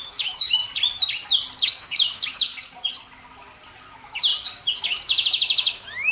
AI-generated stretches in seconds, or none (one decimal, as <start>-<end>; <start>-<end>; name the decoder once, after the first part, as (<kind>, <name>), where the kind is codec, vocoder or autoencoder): 0.0-0.6 (autoencoder, DAC-VAE); 1.6-2.5; 3.9-4.3; 4.8-6.1